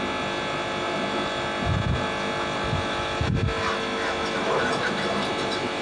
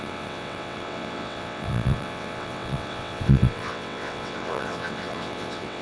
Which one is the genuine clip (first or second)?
first